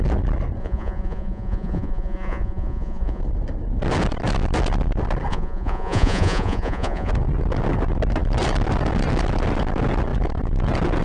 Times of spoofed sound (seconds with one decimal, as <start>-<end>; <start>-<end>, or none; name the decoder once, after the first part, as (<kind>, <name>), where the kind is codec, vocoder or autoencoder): 0.6-3.2 (vocoder, Vocos); 5.3-7.1